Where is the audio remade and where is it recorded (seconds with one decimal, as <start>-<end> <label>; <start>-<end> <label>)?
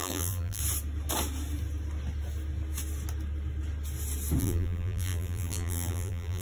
0.0-0.6 remade; 0.6-4.4 recorded; 4.4-6.4 remade